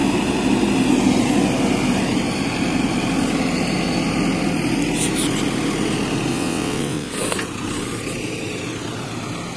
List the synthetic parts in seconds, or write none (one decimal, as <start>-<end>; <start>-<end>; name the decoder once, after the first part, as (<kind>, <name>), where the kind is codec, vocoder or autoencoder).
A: 6.3-7.1 (vocoder, WaveNeXt)